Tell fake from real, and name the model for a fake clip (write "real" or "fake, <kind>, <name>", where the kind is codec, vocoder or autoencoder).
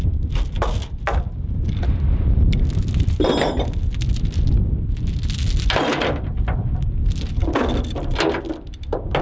real